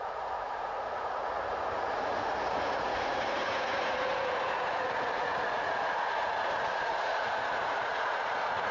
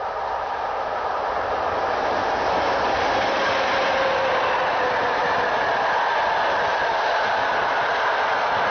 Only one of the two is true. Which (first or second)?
second